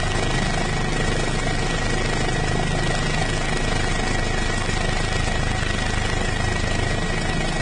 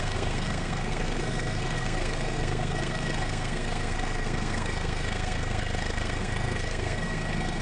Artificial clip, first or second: second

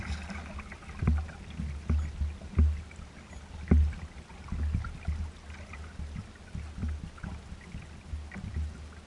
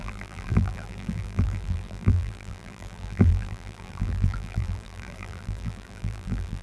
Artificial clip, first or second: second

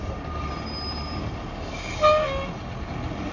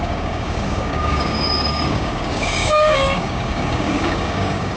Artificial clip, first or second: second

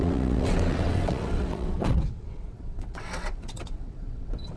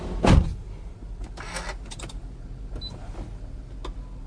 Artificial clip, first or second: first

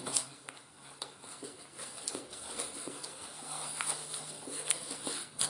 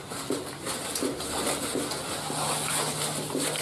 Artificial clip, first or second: first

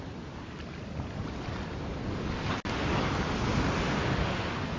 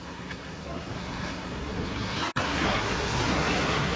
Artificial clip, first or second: second